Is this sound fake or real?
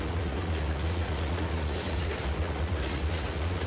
fake